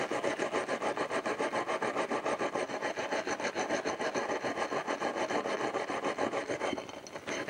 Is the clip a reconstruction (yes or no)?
yes